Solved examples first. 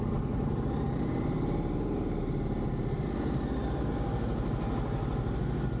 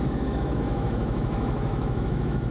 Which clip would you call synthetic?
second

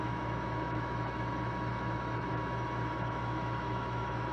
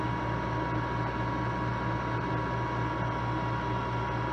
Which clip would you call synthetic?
first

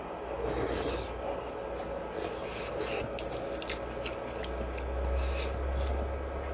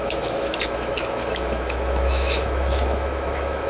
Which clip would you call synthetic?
second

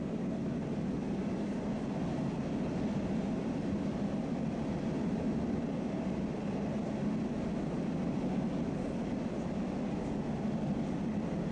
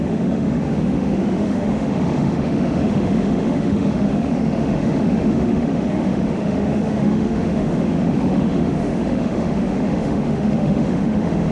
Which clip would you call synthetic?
second